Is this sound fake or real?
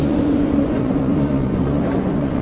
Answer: fake